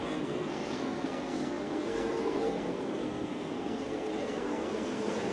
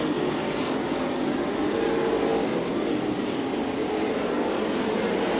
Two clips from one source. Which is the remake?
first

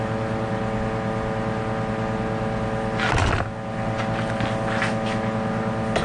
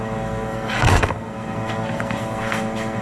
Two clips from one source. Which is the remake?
second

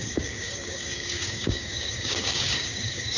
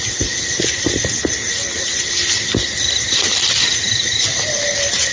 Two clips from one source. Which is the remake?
first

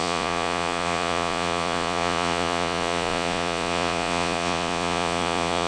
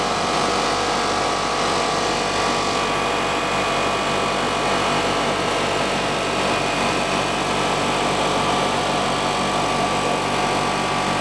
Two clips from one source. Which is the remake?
first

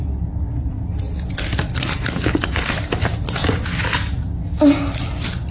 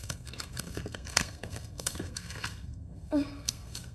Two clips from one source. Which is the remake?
second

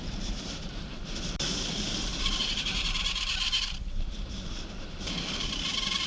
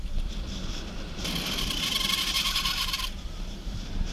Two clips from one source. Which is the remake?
first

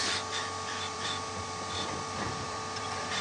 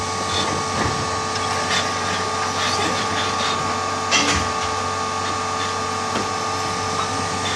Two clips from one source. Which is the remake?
first